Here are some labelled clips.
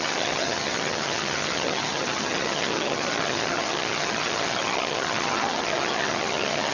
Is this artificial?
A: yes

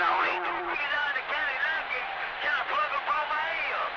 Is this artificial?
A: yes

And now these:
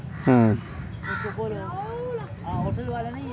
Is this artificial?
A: no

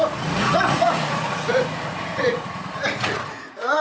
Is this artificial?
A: yes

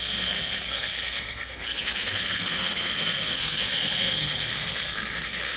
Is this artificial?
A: yes